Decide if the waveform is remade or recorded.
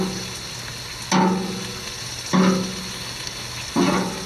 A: recorded